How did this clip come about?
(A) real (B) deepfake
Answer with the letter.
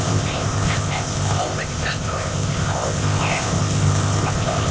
B